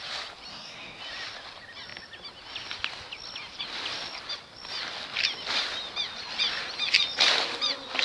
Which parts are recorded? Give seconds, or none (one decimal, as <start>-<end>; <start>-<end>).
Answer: 0.0-0.5; 1.0-8.0

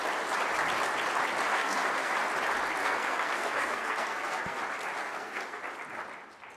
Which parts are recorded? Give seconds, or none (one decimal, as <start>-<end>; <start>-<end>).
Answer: 0.0-1.5; 2.1-2.8; 4.6-5.0; 5.6-6.6

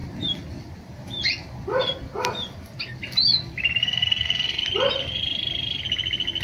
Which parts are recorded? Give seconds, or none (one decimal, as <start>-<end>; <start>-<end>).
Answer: 0.0-3.8; 4.6-6.4

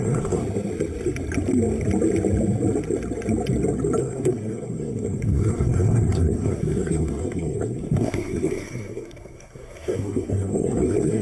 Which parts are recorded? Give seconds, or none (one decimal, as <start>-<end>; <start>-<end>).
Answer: 0.4-4.0

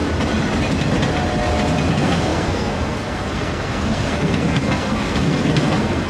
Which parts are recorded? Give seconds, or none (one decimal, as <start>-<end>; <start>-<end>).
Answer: 0.0-1.9

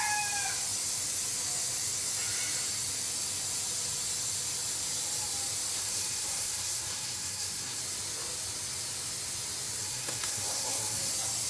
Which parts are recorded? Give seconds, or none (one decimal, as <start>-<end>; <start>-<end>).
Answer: 0.0-5.8; 7.8-9.8; 11.1-11.5

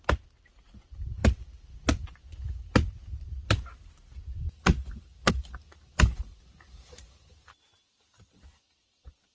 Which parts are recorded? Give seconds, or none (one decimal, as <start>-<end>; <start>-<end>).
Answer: 0.0-9.3

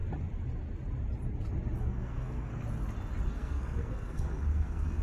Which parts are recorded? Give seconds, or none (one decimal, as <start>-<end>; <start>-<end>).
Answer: 0.0-1.8; 2.5-3.3